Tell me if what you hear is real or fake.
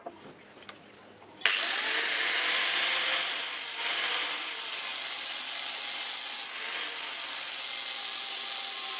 real